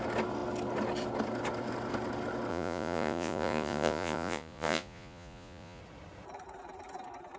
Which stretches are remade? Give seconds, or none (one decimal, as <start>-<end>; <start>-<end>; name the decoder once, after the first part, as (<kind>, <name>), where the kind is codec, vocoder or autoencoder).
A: 2.5-5.8 (vocoder, Vocos)